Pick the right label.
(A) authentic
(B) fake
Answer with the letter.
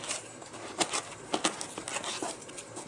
A